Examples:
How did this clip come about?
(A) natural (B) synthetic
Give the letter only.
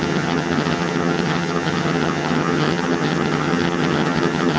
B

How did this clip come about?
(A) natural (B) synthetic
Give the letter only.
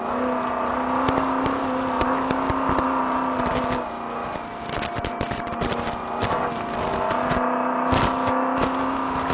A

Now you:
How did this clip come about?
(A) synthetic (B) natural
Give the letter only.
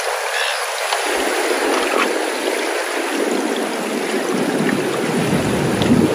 B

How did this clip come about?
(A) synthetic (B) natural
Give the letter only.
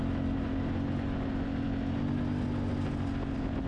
B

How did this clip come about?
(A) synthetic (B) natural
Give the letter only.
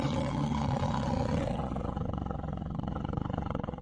A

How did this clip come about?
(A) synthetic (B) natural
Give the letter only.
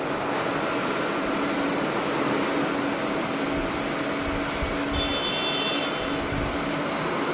B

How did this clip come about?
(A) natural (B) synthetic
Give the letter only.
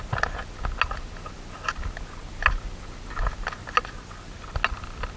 A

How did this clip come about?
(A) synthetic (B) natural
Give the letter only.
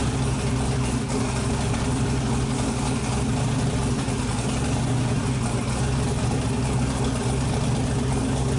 B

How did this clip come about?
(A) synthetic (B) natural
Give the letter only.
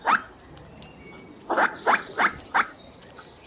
B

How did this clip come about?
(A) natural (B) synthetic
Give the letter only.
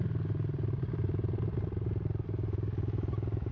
A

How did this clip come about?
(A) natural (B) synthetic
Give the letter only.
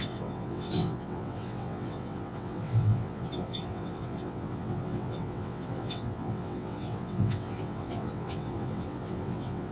B